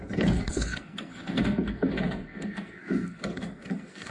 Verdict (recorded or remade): remade